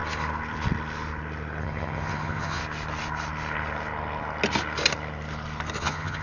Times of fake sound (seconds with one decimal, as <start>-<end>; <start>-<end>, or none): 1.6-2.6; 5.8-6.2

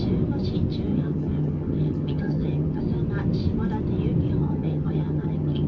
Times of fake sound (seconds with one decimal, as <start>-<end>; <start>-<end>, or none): 0.9-2.8; 4.4-5.7

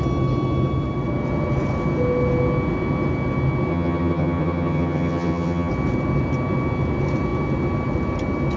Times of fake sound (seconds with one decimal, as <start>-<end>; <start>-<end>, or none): 3.7-5.7

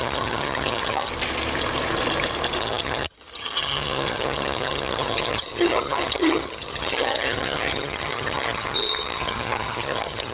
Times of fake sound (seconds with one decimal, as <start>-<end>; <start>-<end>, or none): 0.0-1.1; 2.6-10.3

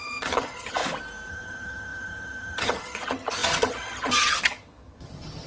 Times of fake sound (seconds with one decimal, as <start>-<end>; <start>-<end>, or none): 0.0-0.8; 1.3-5.5

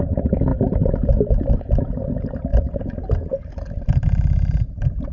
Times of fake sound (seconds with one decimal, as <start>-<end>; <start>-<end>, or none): none

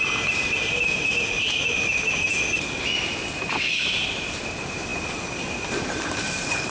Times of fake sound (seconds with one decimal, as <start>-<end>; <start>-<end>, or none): none

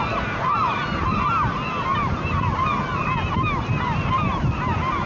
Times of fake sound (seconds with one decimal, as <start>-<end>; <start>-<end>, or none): none